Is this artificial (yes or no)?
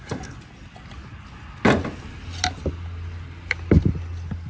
no